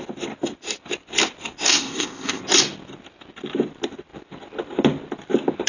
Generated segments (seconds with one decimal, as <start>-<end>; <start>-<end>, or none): 1.7-2.4